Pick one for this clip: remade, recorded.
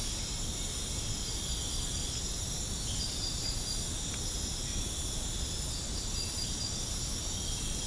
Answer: recorded